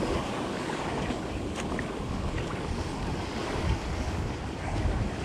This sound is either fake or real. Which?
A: fake